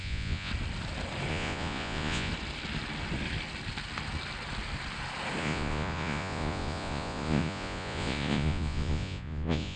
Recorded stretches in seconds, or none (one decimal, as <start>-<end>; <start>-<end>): 0.5-1.3; 2.3-5.4